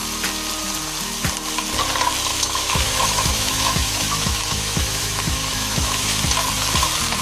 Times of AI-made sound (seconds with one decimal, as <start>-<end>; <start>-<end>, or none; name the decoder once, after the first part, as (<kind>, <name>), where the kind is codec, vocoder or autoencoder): 2.3-6.2 (autoencoder, DAC-VAE)